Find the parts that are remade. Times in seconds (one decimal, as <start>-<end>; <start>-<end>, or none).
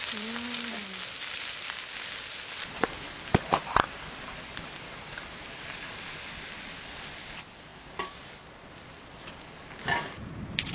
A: 7.7-8.5